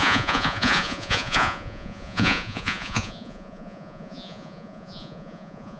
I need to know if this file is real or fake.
fake